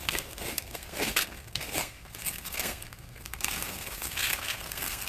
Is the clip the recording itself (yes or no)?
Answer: no